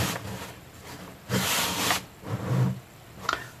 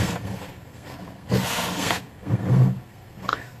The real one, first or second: first